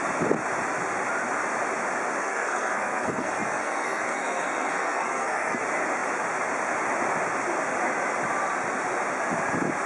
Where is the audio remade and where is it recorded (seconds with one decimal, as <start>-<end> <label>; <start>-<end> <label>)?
0.0-2.2 recorded; 2.2-5.6 remade; 5.6-9.9 recorded